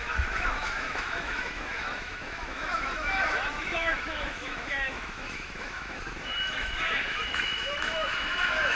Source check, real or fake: fake